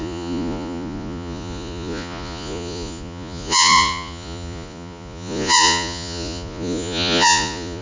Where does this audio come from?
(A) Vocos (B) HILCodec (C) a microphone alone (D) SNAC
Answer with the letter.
A